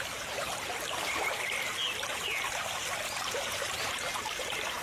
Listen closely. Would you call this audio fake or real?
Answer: fake